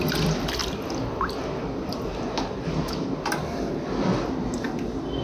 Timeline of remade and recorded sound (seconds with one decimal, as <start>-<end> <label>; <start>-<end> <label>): 0.0-5.2 recorded